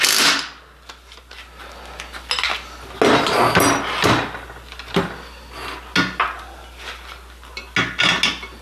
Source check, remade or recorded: recorded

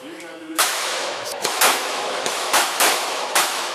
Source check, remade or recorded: remade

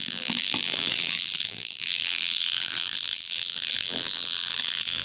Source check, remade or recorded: remade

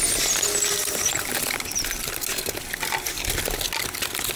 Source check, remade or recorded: recorded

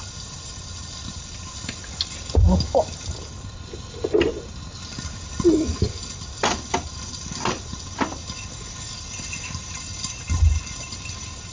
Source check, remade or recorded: recorded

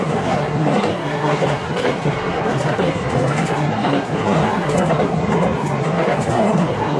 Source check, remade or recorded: remade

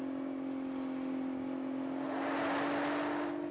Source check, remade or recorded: recorded